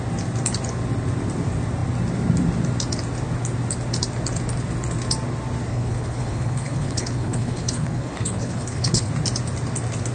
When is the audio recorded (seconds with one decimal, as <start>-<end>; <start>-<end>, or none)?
0.0-5.7; 9.1-10.1